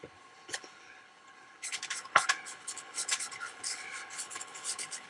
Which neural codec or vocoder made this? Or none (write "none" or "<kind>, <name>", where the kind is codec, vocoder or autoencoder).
codec, HILCodec